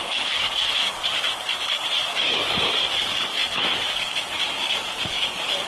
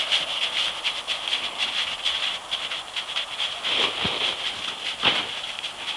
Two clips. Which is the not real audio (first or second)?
first